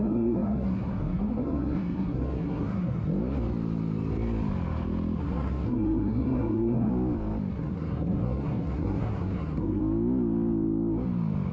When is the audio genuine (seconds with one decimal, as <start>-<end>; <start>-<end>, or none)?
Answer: 3.1-5.2; 6.9-7.5; 9.8-11.5